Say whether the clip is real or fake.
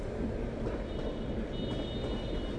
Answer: real